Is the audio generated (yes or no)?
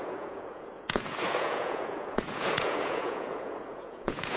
yes